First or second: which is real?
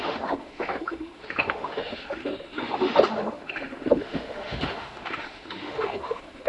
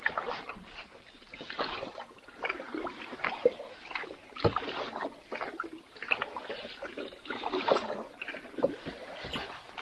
second